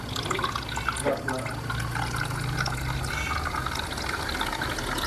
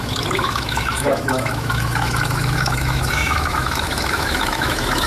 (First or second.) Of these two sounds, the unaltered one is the first